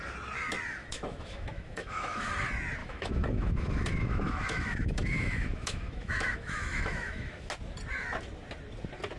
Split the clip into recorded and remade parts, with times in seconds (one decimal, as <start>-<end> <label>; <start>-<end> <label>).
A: 0.0-0.8 recorded; 0.8-2.3 remade; 2.3-2.8 recorded; 2.8-7.5 remade; 7.5-9.2 recorded